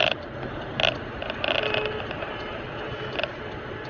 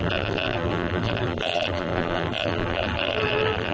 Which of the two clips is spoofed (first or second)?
second